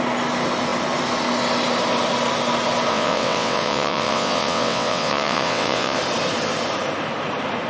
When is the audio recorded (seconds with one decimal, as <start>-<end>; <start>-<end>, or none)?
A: 0.0-2.9; 6.0-7.7